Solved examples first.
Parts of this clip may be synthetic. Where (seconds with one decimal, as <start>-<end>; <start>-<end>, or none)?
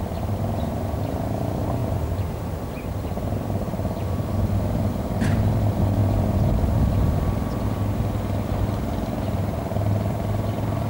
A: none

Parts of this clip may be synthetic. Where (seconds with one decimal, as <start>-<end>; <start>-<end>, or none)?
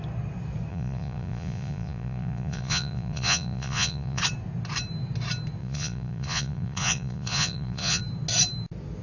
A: 0.7-4.2; 5.6-8.0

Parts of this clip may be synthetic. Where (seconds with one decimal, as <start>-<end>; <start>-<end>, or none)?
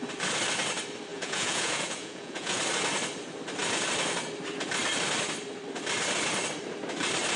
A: 1.1-2.6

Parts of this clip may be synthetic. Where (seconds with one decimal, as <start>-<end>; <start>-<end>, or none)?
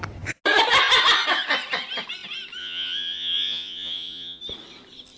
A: 2.6-4.4